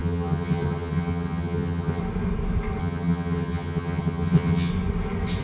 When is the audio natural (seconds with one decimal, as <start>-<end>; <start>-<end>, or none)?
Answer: 2.0-2.8; 4.7-5.4